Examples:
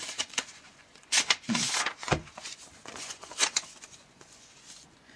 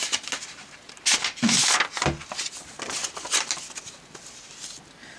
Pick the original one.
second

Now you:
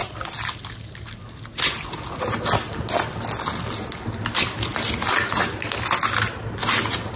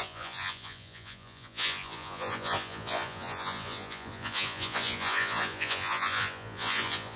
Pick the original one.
first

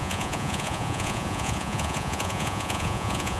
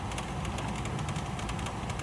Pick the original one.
second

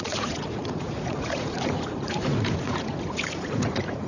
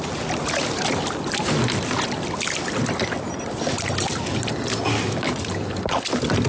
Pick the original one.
second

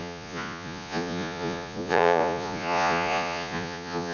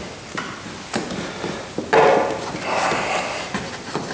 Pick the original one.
second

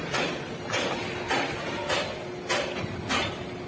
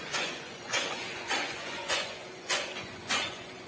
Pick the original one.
first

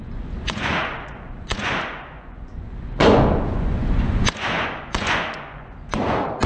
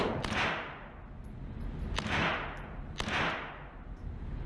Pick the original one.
second